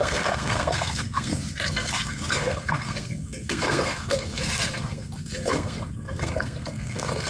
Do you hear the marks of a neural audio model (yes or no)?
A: yes